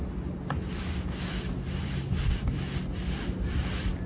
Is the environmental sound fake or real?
real